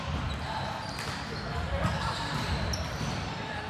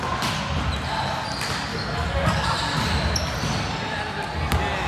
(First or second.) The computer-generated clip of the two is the first